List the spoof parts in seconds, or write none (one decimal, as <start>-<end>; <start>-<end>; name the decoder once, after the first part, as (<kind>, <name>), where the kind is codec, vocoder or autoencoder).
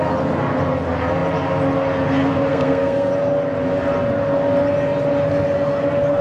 2.5-3.1 (codec, SNAC)